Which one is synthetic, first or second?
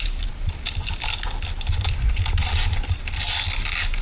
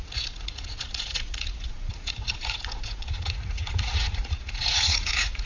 second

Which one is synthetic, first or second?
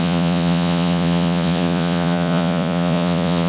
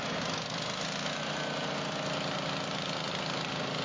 first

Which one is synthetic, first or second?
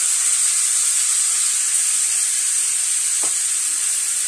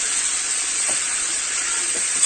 second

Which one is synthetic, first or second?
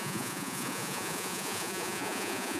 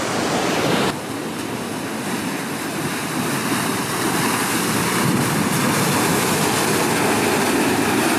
first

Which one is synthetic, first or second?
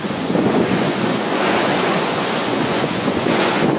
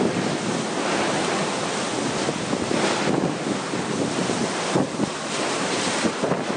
first